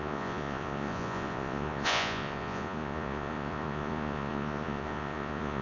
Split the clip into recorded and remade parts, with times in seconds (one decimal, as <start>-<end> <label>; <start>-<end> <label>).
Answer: 0.0-5.6 remade